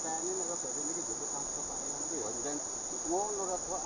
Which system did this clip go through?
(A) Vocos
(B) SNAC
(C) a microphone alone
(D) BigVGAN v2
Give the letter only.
C